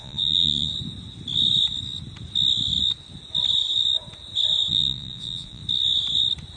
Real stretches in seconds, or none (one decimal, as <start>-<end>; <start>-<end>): 0.7-4.7; 5.6-6.6